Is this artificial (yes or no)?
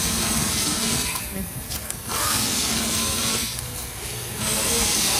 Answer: yes